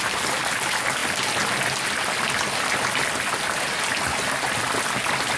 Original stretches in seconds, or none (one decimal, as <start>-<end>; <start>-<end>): 0.0-5.4